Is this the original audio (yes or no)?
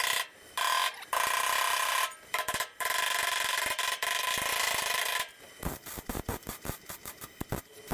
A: yes